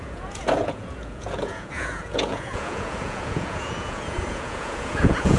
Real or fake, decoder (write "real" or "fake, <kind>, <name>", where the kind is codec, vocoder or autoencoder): fake, vocoder, Vocos